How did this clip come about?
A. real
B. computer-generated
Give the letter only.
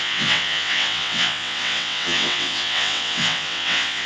B